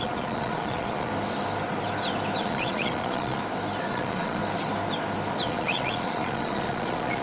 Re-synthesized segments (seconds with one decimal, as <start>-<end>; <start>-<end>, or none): 0.0-1.1; 2.4-3.4; 3.9-4.4; 5.4-7.2